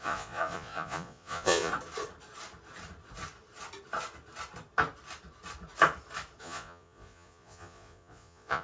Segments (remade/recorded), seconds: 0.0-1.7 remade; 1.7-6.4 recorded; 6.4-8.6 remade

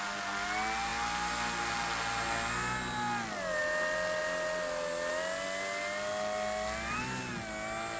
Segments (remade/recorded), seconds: 0.0-8.0 recorded

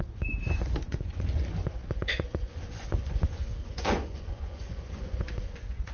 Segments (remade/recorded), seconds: 0.0-5.9 remade

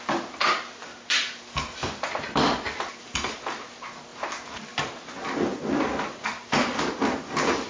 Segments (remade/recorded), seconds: 0.0-7.7 recorded

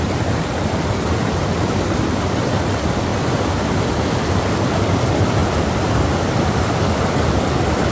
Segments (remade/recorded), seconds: 0.0-7.9 recorded

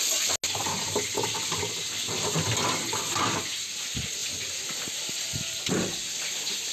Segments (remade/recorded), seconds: 0.0-4.2 recorded; 4.2-5.6 remade; 5.6-6.7 recorded

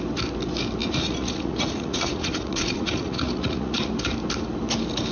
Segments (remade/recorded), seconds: 0.0-0.8 recorded; 0.8-3.9 remade; 3.9-5.1 recorded

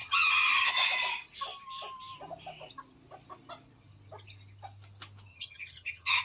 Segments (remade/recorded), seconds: 0.0-0.7 remade; 0.7-5.3 recorded; 5.3-6.2 remade